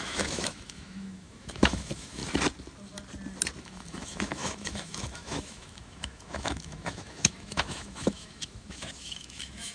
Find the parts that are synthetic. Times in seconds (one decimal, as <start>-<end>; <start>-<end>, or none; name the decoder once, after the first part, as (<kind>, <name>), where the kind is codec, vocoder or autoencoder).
0.0-2.2 (autoencoder, DAC-VAE); 3.6-9.7